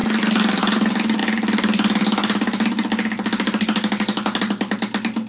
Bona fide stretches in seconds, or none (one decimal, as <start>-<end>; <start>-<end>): 0.0-5.3

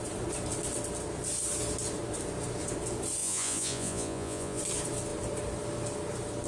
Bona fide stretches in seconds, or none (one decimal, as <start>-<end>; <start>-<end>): 0.0-3.2; 4.6-6.5

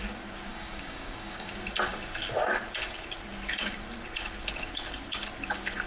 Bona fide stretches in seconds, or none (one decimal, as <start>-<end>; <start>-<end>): 0.0-0.5; 1.5-5.9

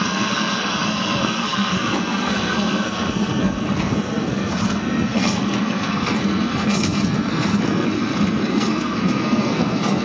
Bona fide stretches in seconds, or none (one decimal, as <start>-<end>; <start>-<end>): none

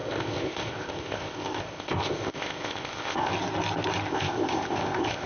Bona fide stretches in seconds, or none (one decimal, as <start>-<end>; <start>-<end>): 3.3-4.1

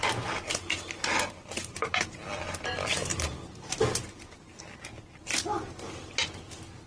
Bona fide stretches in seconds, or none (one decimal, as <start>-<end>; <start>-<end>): 0.0-6.9

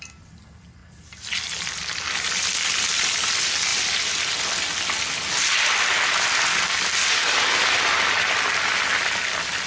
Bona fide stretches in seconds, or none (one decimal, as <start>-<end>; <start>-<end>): 0.0-9.7

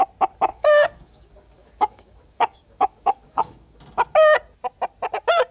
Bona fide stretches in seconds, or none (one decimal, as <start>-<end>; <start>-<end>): 0.0-0.5; 3.8-5.5